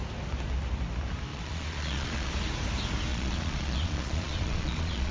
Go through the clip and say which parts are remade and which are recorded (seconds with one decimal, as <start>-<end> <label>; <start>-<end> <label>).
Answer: 0.0-1.3 recorded; 1.3-2.3 remade; 2.3-3.1 recorded; 3.1-5.1 remade